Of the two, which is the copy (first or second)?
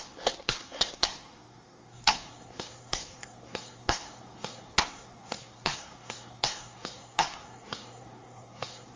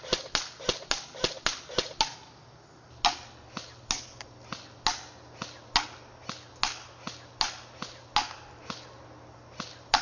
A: first